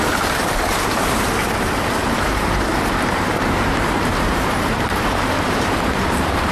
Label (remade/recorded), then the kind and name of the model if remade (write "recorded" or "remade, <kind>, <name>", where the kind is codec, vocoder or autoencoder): remade, vocoder, BigVGAN v2